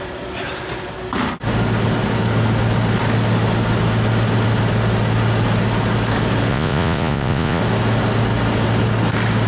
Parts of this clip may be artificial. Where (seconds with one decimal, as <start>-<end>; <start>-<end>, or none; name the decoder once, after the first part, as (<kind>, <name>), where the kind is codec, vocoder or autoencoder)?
6.5-7.6 (vocoder, Vocos)